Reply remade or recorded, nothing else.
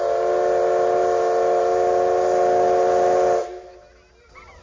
recorded